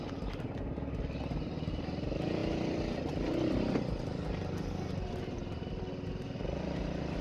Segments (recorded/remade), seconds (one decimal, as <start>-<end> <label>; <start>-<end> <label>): 0.0-7.2 recorded